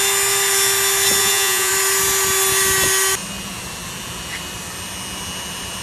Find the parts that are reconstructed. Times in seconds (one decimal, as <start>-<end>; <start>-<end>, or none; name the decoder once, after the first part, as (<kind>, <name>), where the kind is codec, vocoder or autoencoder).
1.2-1.7 (vocoder, Vocos)